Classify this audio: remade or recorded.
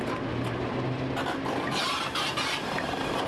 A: recorded